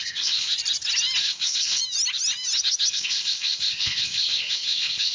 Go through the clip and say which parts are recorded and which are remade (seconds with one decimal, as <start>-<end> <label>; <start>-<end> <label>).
0.0-0.5 remade; 0.5-1.2 recorded; 1.2-1.8 remade; 1.8-2.9 recorded; 2.9-5.1 remade